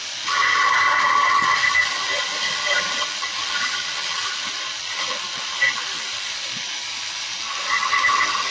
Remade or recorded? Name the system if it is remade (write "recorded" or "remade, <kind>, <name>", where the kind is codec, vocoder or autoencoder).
remade, vocoder, BigVGAN v2